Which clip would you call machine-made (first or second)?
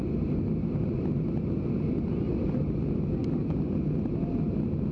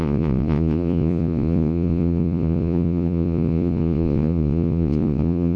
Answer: second